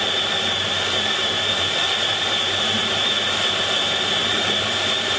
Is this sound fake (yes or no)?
yes